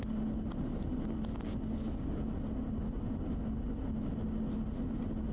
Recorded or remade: recorded